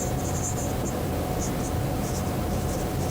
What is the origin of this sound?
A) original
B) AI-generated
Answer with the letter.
B